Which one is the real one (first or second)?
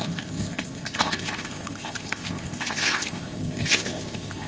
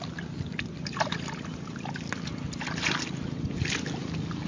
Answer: second